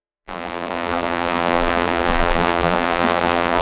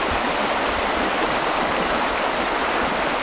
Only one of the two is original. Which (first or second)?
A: second